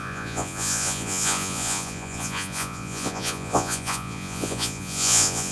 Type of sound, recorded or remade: remade